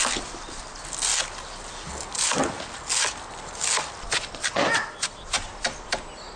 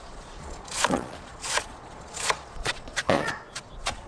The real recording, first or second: first